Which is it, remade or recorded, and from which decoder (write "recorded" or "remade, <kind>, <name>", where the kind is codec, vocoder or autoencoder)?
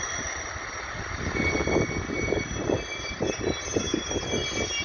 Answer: recorded